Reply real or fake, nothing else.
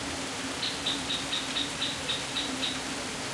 real